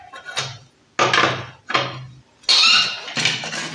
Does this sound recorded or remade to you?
recorded